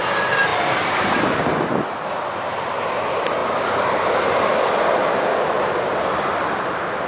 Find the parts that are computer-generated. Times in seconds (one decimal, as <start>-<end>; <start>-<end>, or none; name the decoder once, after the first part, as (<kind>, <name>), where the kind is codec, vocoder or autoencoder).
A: 0.5-1.1 (vocoder, BigVGAN v2)